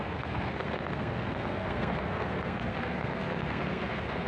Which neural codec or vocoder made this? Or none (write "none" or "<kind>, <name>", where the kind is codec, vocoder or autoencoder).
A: codec, SNAC